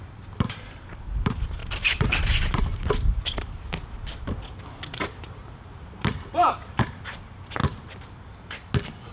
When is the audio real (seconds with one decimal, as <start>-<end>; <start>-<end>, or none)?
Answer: 4.2-5.2; 7.6-9.1